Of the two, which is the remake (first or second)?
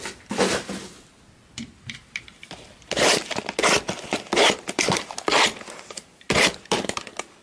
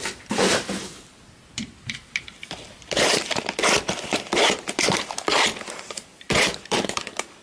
second